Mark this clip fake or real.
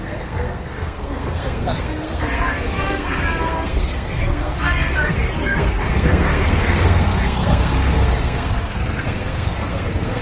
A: fake